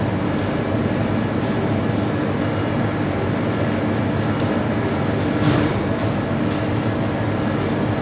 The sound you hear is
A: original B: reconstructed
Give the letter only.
A